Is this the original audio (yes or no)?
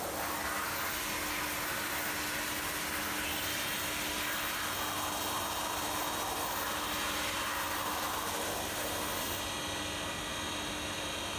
yes